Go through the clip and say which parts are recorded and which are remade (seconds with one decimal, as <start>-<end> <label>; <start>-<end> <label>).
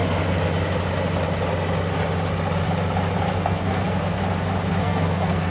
0.0-3.3 recorded; 3.3-4.2 remade; 4.2-4.8 recorded; 4.8-5.5 remade